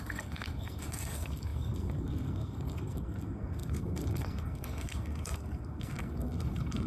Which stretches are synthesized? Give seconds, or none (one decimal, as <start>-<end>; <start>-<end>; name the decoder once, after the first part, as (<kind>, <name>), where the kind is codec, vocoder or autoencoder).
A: 0.0-6.9 (codec, SNAC)